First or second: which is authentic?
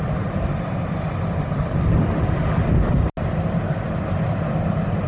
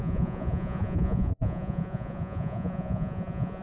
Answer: first